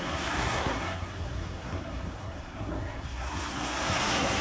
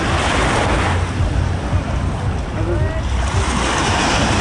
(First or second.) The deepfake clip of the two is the first